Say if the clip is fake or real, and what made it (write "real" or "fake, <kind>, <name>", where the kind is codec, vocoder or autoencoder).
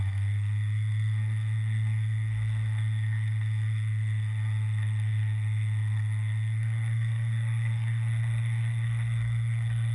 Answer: fake, codec, SNAC